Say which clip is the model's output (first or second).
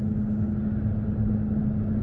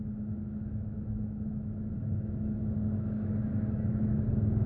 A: second